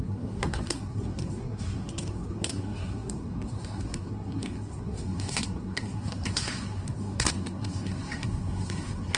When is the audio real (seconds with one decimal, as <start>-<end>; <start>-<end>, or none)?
none

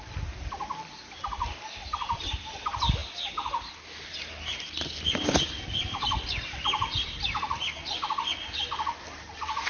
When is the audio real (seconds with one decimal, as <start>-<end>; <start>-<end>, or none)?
0.0-9.7